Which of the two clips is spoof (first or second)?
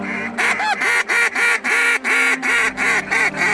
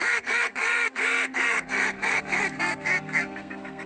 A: second